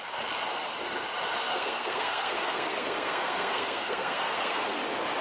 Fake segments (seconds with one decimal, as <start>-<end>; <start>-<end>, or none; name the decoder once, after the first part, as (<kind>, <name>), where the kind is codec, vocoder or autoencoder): 1.5-4.6 (codec, SNAC)